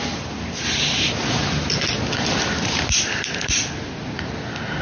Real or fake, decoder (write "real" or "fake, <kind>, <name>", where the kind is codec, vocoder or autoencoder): real